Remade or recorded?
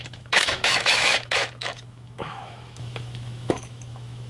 remade